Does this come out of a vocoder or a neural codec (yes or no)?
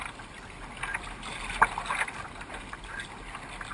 no